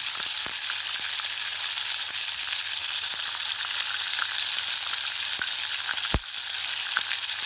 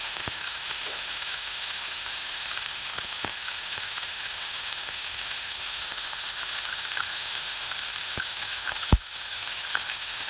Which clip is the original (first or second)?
first